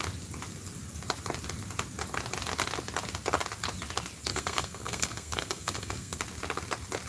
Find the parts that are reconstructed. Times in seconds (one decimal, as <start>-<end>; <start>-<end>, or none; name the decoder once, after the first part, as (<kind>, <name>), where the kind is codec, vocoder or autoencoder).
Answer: 4.3-6.2 (codec, SNAC)